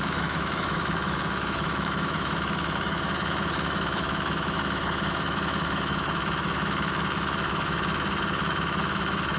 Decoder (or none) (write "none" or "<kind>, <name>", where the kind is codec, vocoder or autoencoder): autoencoder, DAC-VAE